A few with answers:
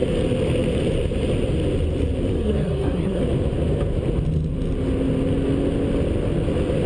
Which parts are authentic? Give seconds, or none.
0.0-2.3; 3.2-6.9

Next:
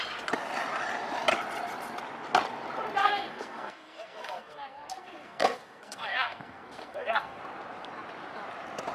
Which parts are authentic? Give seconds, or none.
0.0-3.0; 7.4-8.9

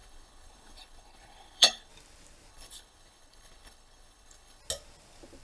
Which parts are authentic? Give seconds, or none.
1.9-2.5; 4.6-5.4

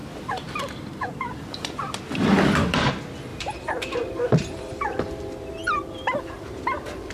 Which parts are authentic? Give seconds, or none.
2.9-3.3; 4.6-7.1

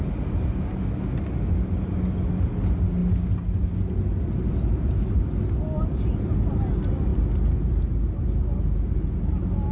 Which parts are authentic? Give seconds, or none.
0.0-9.7

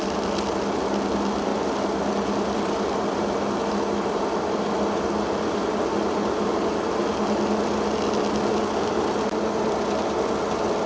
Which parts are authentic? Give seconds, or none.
0.0-10.9